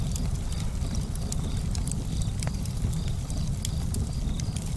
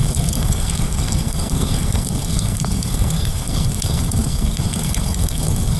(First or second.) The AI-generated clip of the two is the second